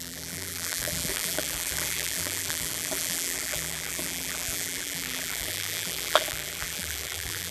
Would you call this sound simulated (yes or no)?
yes